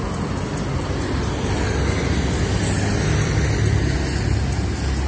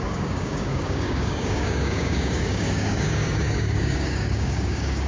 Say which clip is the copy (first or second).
second